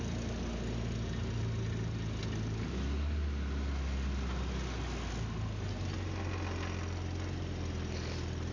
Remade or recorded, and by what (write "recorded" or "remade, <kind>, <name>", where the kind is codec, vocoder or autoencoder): recorded